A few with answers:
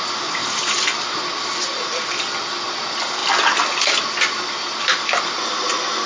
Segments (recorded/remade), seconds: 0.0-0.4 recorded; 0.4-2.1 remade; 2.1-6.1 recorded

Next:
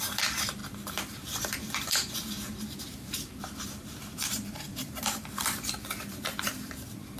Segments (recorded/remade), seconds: 0.0-7.2 remade

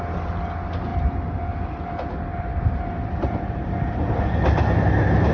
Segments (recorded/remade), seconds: 0.0-0.9 recorded; 0.9-4.1 remade; 4.1-5.3 recorded

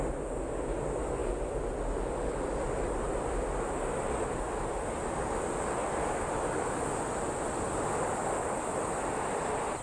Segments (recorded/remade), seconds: 0.0-9.8 recorded

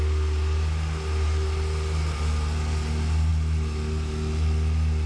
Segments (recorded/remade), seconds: 0.0-5.1 recorded

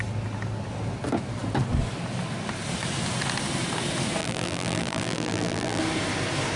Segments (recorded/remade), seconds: 0.0-4.2 recorded; 4.2-5.8 remade; 5.8-6.6 recorded

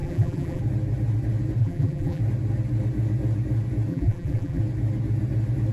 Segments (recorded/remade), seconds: 0.0-0.6 remade; 0.6-1.6 recorded; 1.6-2.2 remade; 2.2-3.9 recorded; 3.9-4.6 remade; 4.6-5.7 recorded